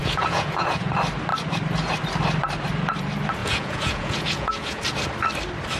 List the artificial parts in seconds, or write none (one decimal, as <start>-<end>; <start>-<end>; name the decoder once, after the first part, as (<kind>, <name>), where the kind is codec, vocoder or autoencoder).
0.0-0.9 (vocoder, Vocos); 3.4-4.8

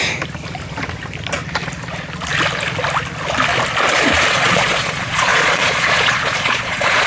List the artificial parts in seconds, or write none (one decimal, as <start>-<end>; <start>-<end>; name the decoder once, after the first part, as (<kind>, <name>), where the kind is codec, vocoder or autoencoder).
4.3-7.1 (vocoder, Vocos)

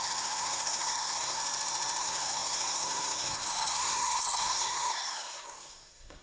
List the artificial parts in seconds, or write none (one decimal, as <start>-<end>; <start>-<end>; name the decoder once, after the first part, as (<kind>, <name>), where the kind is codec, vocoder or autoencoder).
0.0-1.4 (codec, SNAC); 2.0-6.2

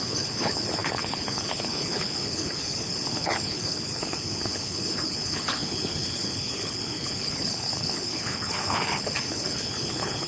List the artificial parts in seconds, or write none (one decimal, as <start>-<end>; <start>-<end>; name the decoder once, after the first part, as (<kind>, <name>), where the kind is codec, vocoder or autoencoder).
0.0-10.3 (codec, HILCodec)

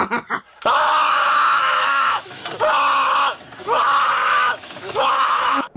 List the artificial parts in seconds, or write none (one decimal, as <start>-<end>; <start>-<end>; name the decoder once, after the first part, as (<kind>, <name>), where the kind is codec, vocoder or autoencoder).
1.0-2.4 (autoencoder, DAC-VAE); 4.2-5.8

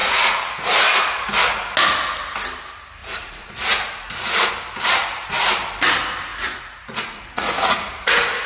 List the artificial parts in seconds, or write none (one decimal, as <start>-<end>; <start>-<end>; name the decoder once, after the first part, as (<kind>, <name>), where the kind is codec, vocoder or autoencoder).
0.0-0.5 (vocoder, Vocos); 3.0-4.5; 6.3-8.5

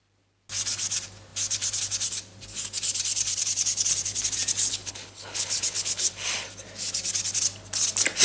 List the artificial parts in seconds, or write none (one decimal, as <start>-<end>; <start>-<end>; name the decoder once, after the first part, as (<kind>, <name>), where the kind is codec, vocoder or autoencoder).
4.7-6.1 (codec, HILCodec)